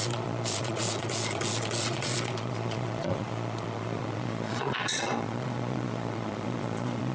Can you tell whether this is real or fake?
fake